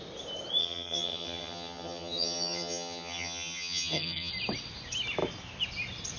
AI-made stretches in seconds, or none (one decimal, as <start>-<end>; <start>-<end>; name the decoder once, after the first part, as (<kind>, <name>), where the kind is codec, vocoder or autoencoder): 0.6-4.3 (vocoder, HiFi-GAN)